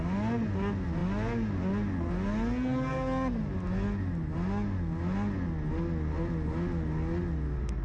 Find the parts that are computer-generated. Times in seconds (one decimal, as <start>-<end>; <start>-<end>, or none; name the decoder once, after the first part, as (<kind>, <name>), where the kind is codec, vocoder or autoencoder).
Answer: none

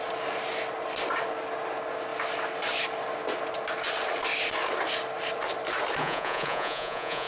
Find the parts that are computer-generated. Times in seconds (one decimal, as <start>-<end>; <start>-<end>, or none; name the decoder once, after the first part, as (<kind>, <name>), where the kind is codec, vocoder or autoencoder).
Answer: 6.0-7.3 (vocoder, Vocos)

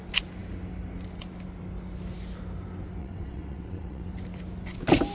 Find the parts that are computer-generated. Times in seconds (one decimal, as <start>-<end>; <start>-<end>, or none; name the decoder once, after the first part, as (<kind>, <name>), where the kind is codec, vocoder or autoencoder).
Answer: 3.0-4.1 (vocoder, WaveNeXt)